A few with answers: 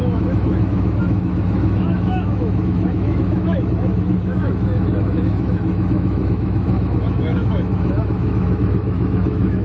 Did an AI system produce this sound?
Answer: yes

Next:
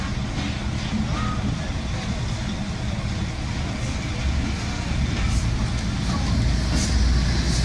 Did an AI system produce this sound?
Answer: no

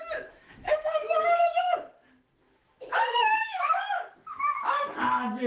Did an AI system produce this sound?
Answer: yes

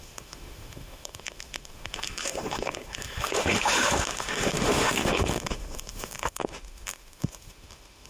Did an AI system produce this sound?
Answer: yes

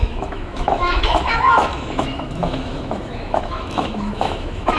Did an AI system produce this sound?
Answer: yes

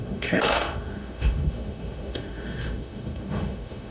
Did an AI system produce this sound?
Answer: yes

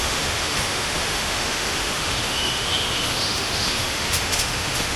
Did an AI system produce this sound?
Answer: yes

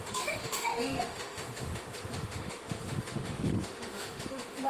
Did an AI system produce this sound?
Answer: yes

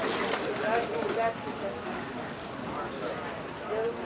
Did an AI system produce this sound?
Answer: no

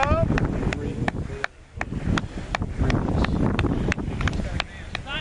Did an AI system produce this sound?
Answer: no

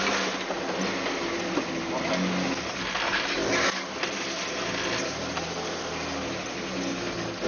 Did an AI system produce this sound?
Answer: no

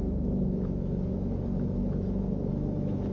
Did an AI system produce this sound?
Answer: yes